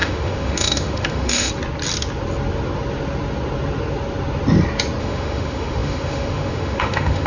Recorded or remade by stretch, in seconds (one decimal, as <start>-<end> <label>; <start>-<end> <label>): 0.0-1.5 remade; 1.5-5.0 recorded; 5.0-7.3 remade